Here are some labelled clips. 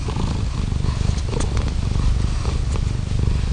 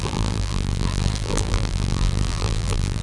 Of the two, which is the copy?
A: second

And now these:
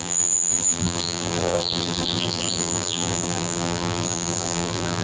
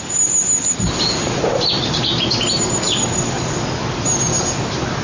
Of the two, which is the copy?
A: first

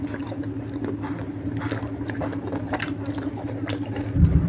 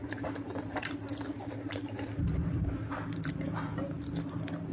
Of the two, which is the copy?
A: second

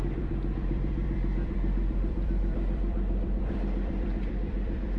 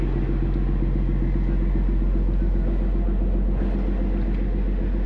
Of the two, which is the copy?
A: first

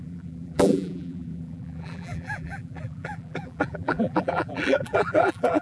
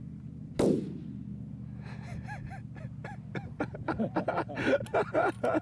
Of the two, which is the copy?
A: first